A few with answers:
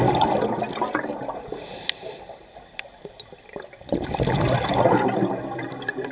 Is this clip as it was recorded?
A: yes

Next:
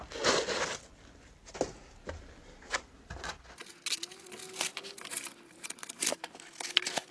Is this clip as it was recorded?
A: yes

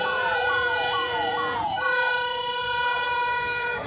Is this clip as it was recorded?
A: no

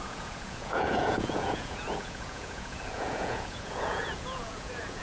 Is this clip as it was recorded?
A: no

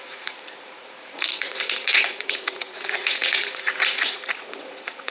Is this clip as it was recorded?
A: no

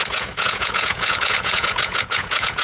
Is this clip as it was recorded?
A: no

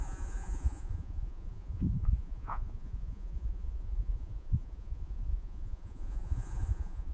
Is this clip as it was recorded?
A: no